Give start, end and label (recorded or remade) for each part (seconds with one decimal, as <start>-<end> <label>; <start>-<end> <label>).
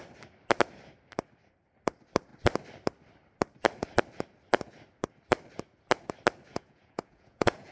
0.0-6.5 recorded; 6.5-7.7 remade